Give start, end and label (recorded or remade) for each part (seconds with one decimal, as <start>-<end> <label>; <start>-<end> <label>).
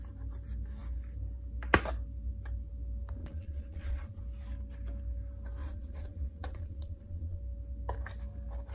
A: 0.0-3.2 recorded; 3.2-4.2 remade; 4.2-5.6 recorded; 5.6-7.4 remade; 7.4-8.7 recorded